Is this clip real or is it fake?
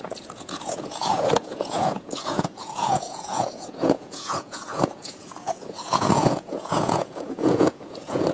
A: fake